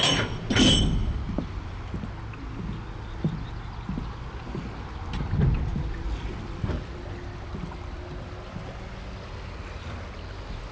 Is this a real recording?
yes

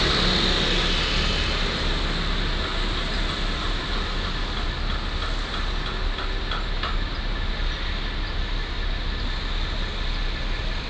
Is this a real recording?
yes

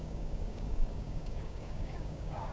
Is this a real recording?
no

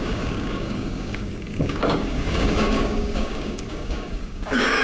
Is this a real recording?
no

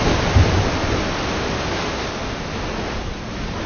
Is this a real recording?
yes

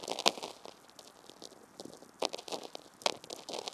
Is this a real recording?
yes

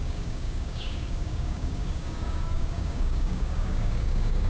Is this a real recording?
no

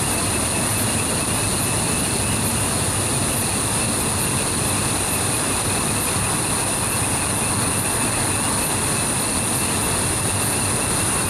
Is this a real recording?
yes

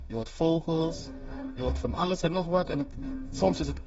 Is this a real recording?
no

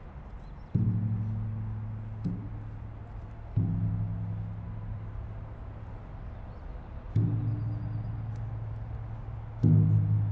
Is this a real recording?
yes